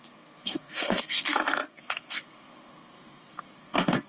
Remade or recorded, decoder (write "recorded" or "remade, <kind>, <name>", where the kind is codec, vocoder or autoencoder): remade, codec, SNAC